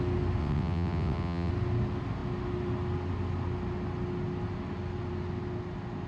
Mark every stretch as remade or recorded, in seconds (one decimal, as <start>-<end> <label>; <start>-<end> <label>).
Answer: 0.0-0.4 recorded; 0.4-1.5 remade; 1.5-6.1 recorded